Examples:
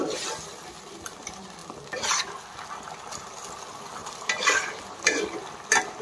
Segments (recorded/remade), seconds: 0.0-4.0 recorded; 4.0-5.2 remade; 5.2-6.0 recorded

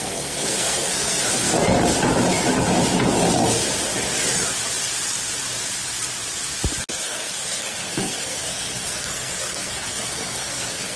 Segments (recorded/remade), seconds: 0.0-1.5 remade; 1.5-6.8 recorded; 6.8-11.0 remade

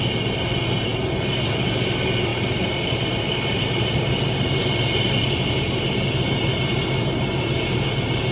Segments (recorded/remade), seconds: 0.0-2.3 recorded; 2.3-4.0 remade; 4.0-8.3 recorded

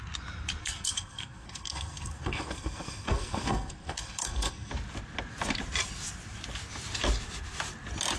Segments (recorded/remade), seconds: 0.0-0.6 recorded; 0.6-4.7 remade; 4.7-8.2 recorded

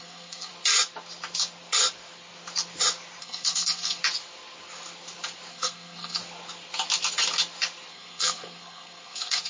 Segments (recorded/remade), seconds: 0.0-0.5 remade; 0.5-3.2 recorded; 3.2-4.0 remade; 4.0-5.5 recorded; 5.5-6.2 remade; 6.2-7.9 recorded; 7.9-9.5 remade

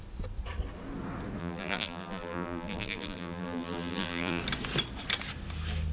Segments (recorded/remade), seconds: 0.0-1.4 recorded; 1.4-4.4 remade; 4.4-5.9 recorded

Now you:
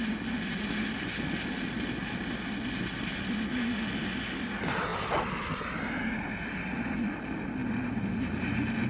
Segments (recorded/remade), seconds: 0.0-8.9 recorded

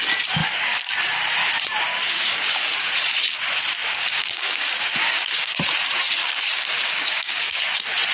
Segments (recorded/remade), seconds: 0.0-0.4 recorded; 0.4-0.9 remade; 0.9-1.9 recorded; 1.9-2.9 remade; 2.9-3.8 recorded; 3.8-5.6 remade; 5.6-6.2 recorded; 6.2-7.6 remade; 7.6-8.1 recorded